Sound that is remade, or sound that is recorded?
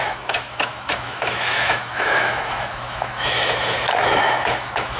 remade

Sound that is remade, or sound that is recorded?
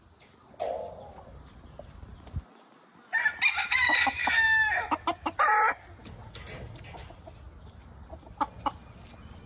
recorded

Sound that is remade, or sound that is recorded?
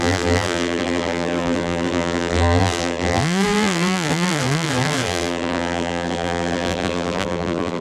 remade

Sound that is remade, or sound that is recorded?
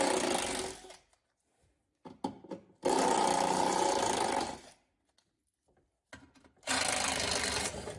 recorded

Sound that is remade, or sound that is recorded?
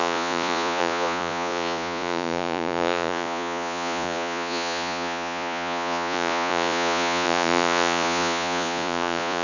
remade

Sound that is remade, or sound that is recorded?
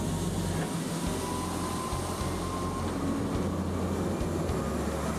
recorded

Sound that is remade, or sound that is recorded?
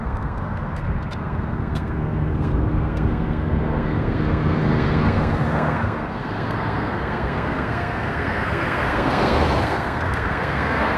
remade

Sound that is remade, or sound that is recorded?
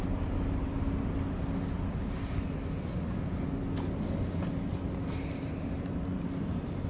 recorded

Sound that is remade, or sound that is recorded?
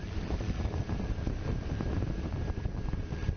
remade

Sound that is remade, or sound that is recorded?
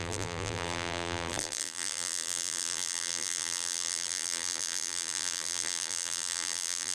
remade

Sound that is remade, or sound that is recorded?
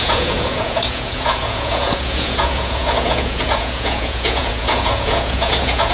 remade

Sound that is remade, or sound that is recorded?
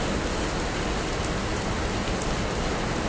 recorded